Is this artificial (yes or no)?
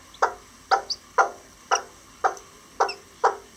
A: no